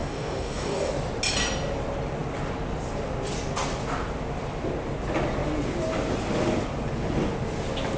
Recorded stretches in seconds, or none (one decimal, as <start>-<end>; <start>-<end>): 0.9-8.0